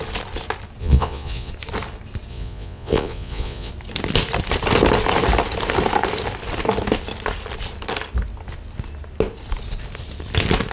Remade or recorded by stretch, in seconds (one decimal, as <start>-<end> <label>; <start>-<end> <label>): 0.0-0.8 recorded; 0.8-1.5 remade; 1.5-2.3 recorded; 2.3-3.7 remade; 3.7-10.7 recorded